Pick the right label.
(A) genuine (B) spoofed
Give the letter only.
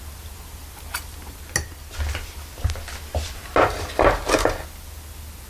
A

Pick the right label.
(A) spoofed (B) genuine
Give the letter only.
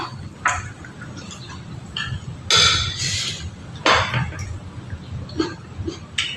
B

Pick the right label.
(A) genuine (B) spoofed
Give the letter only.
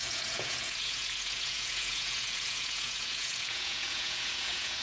B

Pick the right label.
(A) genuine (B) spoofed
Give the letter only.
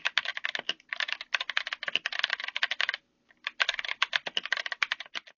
A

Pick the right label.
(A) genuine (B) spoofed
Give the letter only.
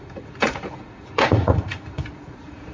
B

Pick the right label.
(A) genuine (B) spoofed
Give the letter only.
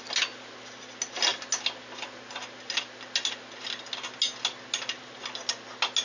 A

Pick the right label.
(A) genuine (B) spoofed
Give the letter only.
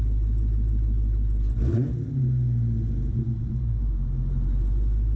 A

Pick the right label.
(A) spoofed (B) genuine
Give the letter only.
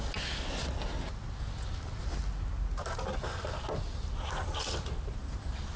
B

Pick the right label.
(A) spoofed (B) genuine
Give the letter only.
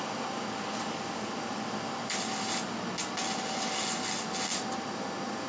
B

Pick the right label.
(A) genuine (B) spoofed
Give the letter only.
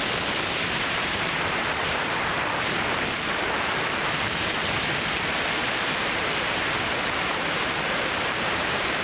B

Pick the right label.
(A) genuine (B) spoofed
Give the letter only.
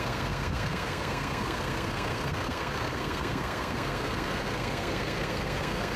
B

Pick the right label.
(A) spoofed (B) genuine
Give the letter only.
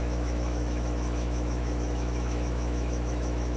A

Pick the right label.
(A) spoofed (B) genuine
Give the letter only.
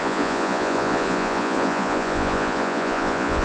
A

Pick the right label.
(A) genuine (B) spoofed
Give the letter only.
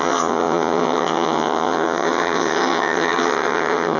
B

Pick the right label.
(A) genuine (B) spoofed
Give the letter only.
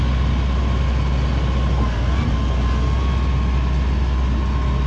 A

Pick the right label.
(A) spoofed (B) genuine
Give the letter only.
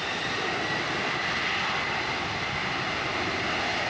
B